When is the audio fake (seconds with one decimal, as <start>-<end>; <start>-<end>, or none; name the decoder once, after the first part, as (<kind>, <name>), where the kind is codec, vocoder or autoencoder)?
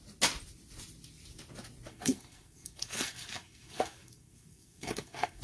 1.9-5.4 (codec, SNAC)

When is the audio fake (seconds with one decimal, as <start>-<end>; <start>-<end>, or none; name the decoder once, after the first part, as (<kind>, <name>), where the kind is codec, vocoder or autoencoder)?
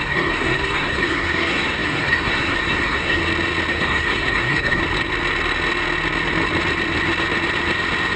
0.0-3.2 (codec, SNAC); 3.7-4.8